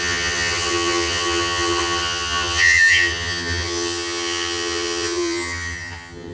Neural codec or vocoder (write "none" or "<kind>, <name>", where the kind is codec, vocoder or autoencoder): vocoder, HiFi-GAN